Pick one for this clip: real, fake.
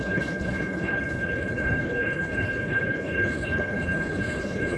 fake